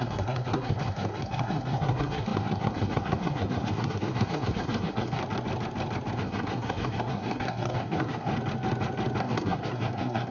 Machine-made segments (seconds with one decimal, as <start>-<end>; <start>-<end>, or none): 0.0-5.2; 6.1-8.3; 9.2-10.3

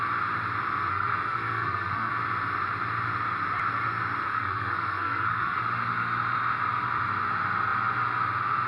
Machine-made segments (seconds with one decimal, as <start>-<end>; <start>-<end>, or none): 0.9-2.1; 4.3-5.6

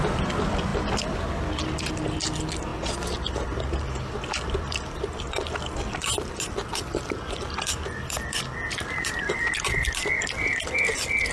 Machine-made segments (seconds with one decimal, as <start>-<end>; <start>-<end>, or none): none

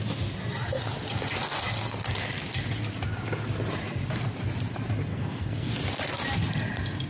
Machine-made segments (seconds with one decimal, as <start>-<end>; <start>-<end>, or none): 5.1-5.7

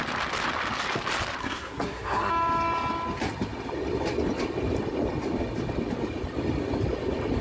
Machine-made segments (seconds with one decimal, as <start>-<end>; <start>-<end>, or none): 1.4-2.3

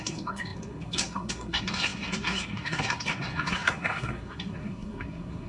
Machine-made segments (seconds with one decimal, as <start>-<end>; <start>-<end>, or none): 0.0-5.5

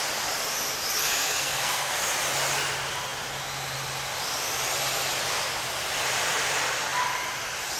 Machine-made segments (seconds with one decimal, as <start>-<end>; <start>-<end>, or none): 1.0-2.0

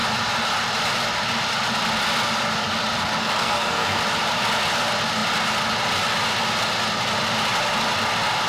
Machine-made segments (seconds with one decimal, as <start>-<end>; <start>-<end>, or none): 3.2-4.0